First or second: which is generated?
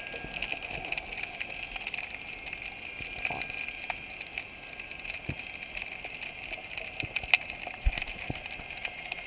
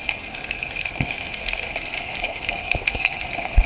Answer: second